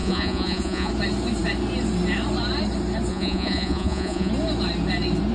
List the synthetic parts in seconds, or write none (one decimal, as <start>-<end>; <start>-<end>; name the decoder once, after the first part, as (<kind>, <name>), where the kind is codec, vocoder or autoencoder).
0.0-0.9 (vocoder, Vocos); 3.1-4.3